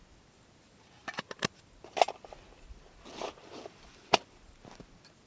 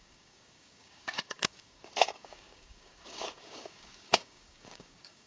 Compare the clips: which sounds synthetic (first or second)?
second